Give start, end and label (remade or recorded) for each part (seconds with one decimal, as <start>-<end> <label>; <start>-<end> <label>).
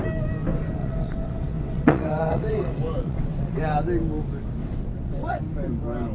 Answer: 0.0-0.8 recorded; 0.8-3.6 remade; 3.6-4.6 recorded; 4.6-5.4 remade; 5.4-6.1 recorded